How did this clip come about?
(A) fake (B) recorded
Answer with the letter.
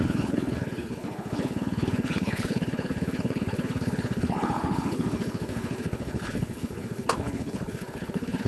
A